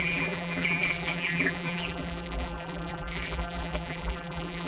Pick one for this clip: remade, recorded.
remade